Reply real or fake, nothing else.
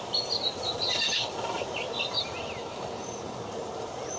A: real